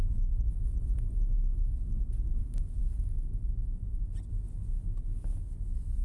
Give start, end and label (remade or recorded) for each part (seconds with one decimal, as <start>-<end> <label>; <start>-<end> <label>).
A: 0.0-6.0 recorded